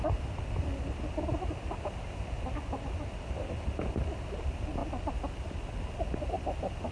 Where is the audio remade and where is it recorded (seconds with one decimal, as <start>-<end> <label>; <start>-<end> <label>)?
0.0-6.9 recorded